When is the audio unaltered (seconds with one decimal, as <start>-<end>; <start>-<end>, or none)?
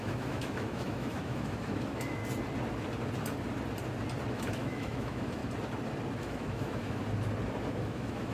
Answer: 2.2-4.3; 5.4-6.2; 7.0-7.7